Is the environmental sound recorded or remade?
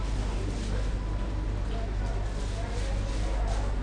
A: recorded